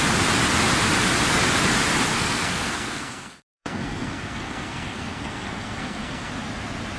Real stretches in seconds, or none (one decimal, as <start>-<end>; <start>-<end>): 0.0-2.1; 6.3-7.0